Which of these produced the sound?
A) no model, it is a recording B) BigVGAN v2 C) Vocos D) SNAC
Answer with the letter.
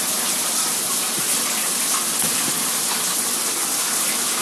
A